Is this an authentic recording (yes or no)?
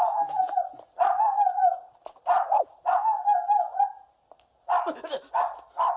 yes